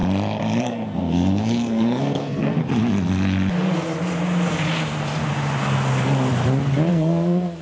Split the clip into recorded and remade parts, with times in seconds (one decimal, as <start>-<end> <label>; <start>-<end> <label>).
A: 0.0-0.6 recorded; 0.6-2.6 remade; 2.6-6.9 recorded; 6.9-7.6 remade